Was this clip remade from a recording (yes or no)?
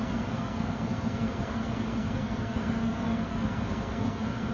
yes